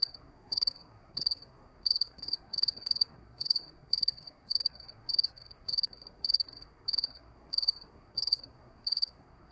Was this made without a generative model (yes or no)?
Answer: no